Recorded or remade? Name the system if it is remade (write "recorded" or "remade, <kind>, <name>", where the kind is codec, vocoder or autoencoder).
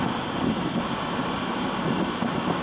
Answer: recorded